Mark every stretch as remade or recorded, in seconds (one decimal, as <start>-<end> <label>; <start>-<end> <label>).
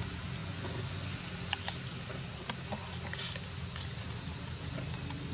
0.0-0.4 recorded; 0.4-1.2 remade; 1.2-5.3 recorded